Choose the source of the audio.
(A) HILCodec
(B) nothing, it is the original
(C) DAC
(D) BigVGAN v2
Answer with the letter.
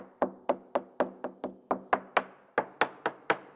B